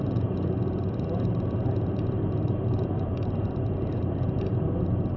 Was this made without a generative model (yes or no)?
no